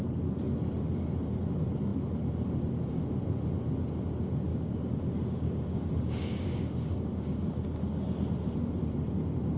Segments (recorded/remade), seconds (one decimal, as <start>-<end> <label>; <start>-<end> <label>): 0.0-4.5 recorded; 4.5-8.2 remade; 8.2-9.6 recorded

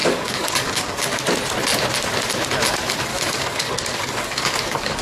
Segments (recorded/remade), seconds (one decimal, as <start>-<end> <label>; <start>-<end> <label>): 0.0-1.2 remade; 1.2-3.1 recorded; 3.1-5.0 remade

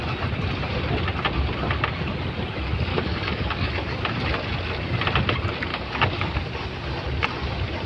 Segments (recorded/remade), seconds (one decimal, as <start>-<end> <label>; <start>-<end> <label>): 0.0-2.9 recorded; 2.9-3.7 remade; 3.7-5.7 recorded; 5.7-6.4 remade; 6.4-7.9 recorded

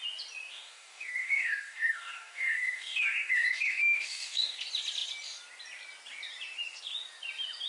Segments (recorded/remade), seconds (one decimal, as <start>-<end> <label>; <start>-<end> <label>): 0.0-0.5 recorded; 0.5-4.6 remade; 4.6-7.7 recorded

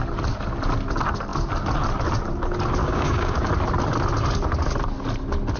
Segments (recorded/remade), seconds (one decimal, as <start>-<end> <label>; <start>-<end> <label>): 0.0-2.8 recorded; 2.8-3.5 remade; 3.5-5.6 recorded

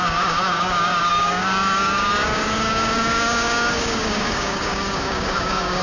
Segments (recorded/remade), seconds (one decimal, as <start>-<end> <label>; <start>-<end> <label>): 0.0-5.8 remade

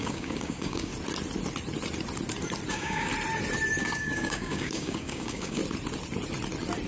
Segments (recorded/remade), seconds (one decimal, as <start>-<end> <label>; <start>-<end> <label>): 0.0-0.9 remade; 0.9-2.7 recorded; 2.7-3.1 remade; 3.1-3.8 recorded; 3.8-5.6 remade; 5.6-6.9 recorded